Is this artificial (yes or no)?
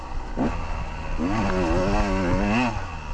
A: no